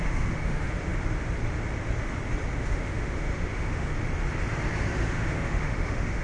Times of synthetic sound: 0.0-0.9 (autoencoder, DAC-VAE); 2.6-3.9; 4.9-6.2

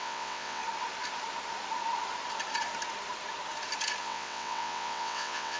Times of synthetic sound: 0.0-0.6 (vocoder, WaveNeXt); 4.0-5.6

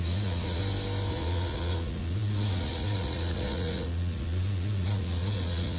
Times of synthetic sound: 0.0-0.6 (vocoder, Vocos); 1.1-5.8

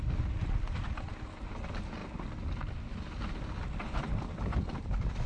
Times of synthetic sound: none